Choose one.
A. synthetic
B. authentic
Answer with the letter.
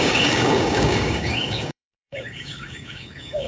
A